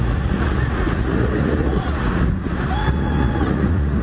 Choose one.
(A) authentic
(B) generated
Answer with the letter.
B